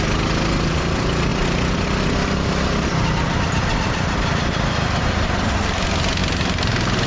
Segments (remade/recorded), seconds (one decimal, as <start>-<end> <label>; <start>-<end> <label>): 0.0-1.3 recorded; 1.3-5.4 remade; 5.4-7.1 recorded